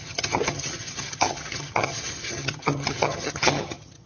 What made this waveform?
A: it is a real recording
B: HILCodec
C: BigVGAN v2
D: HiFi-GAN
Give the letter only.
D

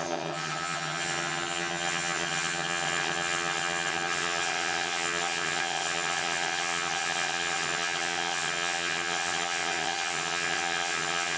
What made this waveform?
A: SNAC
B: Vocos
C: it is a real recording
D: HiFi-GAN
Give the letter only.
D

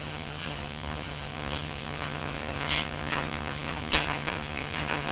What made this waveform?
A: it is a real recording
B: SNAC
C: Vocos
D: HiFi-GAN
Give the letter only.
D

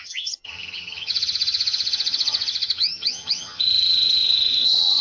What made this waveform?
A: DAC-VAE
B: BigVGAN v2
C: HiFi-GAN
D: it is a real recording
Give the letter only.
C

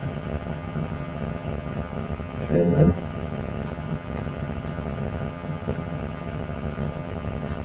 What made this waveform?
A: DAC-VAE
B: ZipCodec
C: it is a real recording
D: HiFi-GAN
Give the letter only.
D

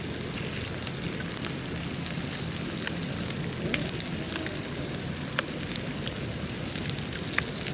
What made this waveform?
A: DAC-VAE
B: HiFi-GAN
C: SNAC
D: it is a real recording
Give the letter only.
D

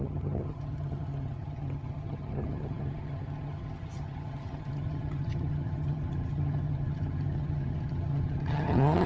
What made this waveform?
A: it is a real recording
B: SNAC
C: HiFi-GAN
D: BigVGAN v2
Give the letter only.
C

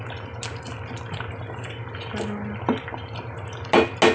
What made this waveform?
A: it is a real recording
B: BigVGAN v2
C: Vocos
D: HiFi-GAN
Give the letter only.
A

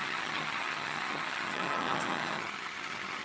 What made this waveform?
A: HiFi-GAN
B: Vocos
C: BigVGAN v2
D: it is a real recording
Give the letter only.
A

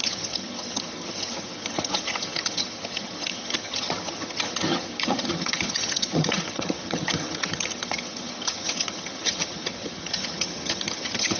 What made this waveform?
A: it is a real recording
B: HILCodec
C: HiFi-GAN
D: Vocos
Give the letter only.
C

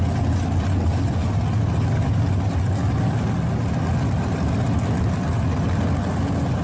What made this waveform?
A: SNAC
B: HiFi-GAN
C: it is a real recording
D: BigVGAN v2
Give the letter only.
C